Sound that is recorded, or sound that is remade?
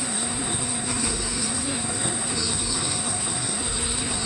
remade